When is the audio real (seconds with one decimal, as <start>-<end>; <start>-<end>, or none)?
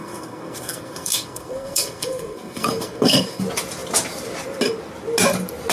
3.4-5.7